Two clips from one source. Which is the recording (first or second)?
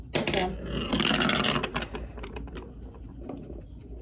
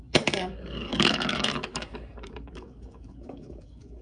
first